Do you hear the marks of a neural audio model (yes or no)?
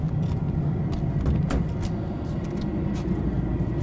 no